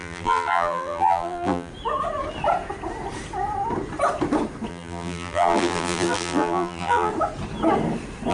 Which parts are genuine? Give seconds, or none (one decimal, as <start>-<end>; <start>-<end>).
1.7-4.7; 7.1-8.3